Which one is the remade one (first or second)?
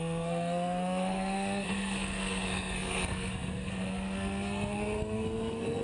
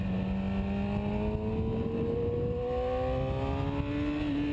first